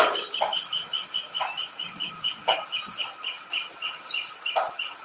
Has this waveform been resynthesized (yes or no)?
no